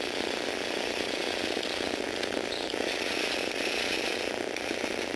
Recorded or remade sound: recorded